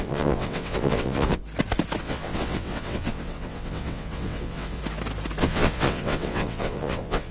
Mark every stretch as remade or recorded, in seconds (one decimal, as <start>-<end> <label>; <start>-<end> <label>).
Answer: 0.0-1.4 remade; 1.4-2.0 recorded; 2.0-4.8 remade; 4.8-5.4 recorded; 5.4-7.3 remade